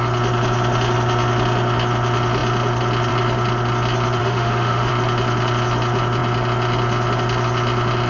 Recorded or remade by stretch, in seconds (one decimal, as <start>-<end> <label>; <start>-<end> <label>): 0.0-4.2 recorded; 4.2-4.9 remade; 4.9-8.1 recorded